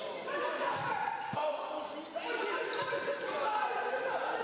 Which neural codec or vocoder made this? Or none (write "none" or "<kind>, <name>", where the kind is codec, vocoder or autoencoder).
none